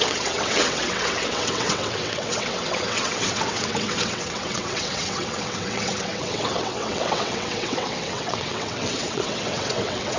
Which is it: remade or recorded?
remade